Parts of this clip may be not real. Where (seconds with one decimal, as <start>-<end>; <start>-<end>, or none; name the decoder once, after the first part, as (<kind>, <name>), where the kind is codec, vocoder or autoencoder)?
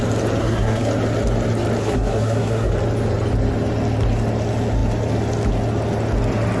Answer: 0.4-0.9 (codec, SNAC); 1.8-2.7